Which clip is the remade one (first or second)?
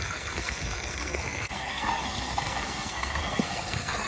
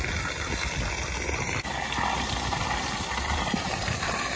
first